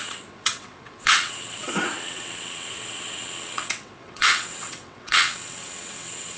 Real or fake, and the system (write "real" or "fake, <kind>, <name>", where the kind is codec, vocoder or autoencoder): fake, vocoder, WaveNeXt